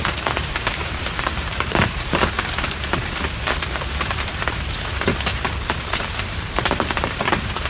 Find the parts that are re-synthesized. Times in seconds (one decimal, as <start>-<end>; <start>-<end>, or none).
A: 0.0-7.7

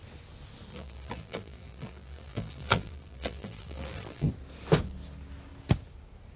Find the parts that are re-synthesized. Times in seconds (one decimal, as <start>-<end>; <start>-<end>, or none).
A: 0.7-4.3

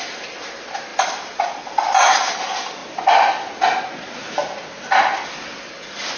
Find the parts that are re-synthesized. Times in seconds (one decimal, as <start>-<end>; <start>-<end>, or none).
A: 0.0-2.8; 5.3-6.2

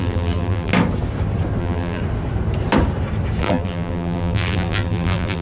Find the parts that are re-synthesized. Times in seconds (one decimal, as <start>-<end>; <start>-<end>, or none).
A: 0.0-0.7; 1.6-2.0; 3.4-5.4

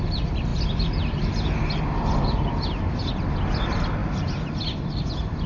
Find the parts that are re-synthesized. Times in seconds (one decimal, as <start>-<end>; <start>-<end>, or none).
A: none

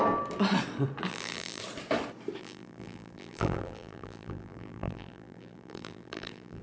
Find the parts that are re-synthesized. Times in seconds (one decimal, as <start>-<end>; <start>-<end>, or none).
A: 1.1-1.6; 2.4-6.6

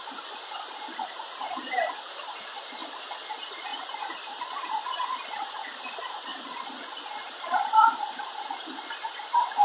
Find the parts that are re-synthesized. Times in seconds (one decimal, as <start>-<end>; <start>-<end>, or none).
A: 0.0-2.8; 3.3-9.6